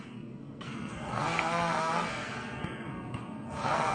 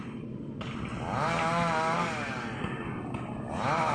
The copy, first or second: first